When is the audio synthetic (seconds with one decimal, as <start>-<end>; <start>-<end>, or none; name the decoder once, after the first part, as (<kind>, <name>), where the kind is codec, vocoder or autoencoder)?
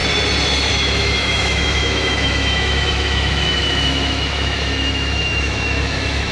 0.7-6.3 (autoencoder, DAC-VAE)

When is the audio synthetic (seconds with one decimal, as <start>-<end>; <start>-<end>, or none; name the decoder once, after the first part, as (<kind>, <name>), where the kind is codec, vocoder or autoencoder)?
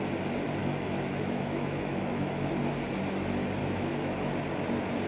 0.6-2.5 (autoencoder, DAC-VAE); 3.6-4.3